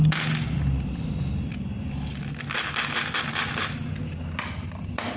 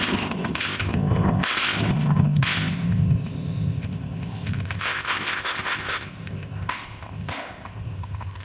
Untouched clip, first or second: first